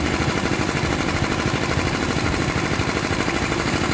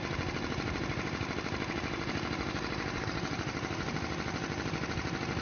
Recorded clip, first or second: second